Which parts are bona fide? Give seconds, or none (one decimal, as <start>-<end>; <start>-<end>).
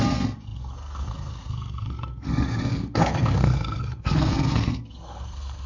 none